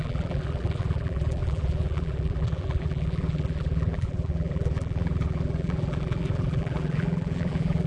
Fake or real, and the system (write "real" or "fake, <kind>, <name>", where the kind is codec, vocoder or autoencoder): fake, vocoder, BigVGAN v2